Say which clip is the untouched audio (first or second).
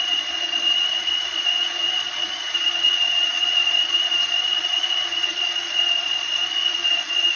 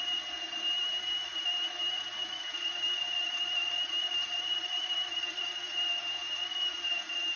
second